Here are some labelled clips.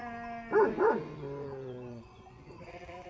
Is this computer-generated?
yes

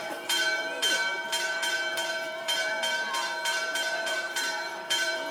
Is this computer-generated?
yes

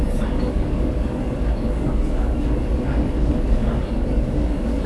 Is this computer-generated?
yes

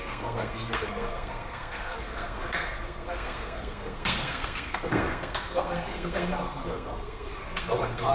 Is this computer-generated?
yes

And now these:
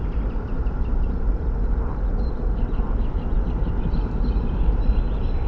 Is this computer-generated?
yes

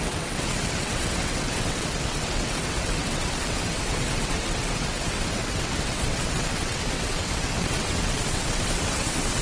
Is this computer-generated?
yes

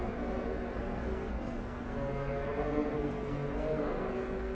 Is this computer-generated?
yes